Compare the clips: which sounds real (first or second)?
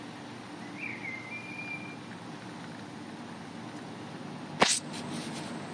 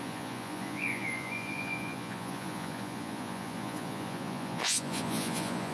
first